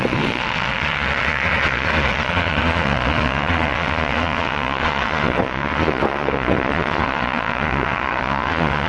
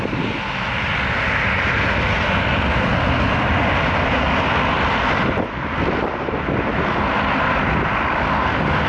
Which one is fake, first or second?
first